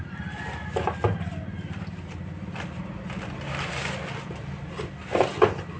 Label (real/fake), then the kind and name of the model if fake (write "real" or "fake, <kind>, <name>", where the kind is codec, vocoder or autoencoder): real